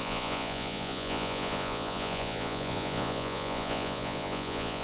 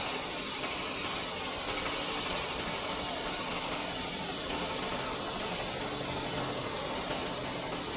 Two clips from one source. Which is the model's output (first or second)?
first